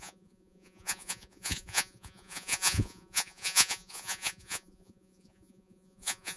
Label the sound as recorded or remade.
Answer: remade